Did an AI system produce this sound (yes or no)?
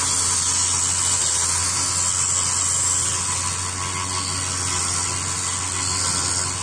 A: no